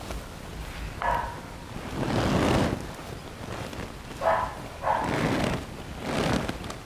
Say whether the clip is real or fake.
real